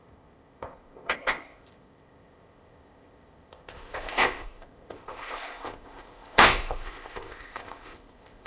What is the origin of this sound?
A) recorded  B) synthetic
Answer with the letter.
B